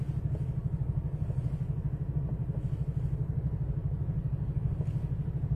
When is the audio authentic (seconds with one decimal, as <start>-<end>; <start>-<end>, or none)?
0.0-5.6